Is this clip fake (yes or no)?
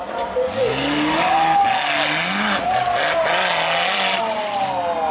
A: no